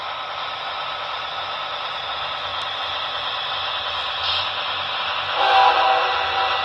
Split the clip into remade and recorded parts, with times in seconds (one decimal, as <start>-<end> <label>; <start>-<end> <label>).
0.0-6.6 recorded